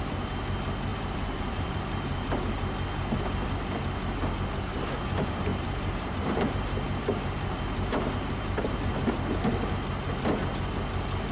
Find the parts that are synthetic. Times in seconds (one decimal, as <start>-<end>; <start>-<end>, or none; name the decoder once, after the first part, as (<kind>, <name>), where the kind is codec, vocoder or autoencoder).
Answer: 0.9-2.3 (vocoder, BigVGAN v2); 5.5-9.1